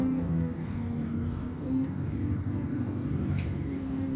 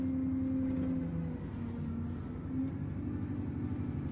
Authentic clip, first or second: second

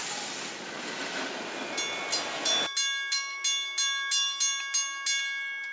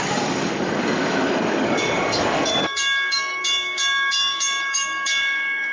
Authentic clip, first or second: first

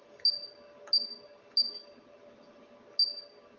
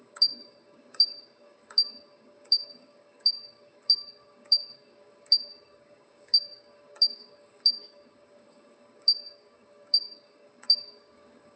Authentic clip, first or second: first